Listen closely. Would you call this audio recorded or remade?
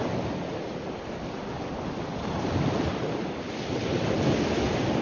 recorded